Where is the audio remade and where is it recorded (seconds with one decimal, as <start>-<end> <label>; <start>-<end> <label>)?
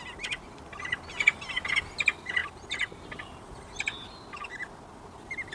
0.0-5.5 recorded